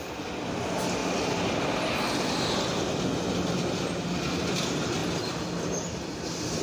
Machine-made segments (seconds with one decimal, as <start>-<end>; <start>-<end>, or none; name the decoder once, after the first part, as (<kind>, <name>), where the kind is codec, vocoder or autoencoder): none